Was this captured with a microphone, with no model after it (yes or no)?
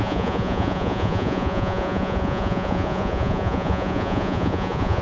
no